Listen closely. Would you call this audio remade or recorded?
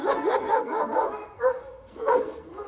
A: remade